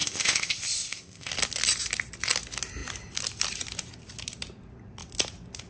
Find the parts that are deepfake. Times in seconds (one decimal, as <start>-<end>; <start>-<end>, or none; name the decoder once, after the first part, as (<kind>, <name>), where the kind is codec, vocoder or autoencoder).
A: 0.0-1.3 (codec, ZipCodec)

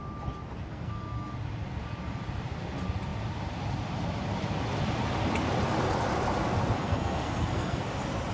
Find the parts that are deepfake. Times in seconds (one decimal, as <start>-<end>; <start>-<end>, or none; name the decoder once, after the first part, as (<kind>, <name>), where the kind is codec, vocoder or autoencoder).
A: 0.7-1.3 (codec, SNAC); 6.8-7.8